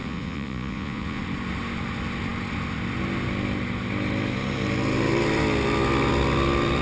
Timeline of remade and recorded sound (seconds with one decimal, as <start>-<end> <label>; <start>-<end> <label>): 0.0-1.2 remade; 1.2-6.8 recorded